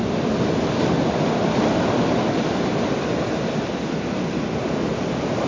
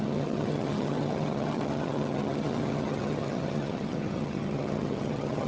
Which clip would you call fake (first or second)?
second